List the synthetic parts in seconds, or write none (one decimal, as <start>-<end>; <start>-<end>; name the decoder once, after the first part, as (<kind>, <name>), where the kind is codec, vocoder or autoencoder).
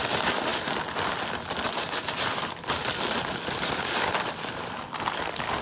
none